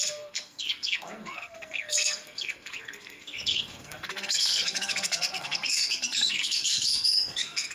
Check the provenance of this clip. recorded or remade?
remade